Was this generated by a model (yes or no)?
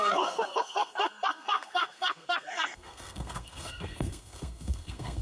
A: yes